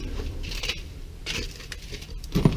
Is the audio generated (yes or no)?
yes